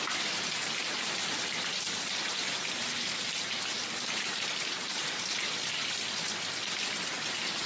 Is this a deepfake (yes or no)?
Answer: no